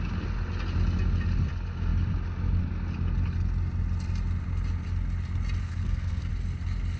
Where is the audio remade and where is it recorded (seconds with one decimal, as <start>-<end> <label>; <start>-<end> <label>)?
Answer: 0.0-5.6 recorded; 5.6-6.3 remade; 6.3-7.0 recorded